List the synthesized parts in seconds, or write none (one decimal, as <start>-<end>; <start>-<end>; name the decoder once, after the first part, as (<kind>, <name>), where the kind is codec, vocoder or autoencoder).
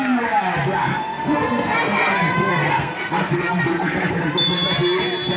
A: 0.9-4.1 (codec, SNAC)